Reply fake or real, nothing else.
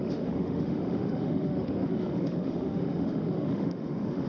fake